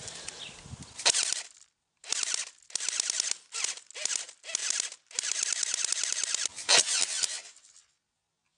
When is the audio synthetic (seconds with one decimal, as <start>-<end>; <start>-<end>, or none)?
none